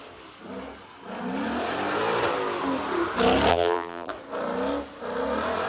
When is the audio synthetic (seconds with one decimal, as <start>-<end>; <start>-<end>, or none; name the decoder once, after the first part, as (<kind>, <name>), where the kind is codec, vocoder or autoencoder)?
3.5-4.1 (vocoder, BigVGAN v2)